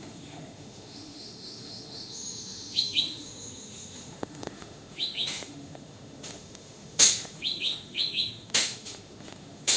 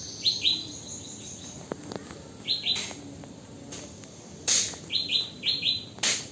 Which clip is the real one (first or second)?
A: second